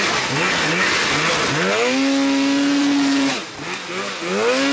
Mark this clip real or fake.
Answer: real